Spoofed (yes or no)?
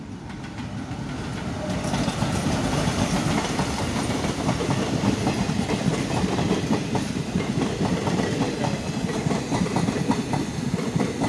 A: no